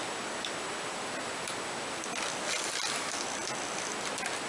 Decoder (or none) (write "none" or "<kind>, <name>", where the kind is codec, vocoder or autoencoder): none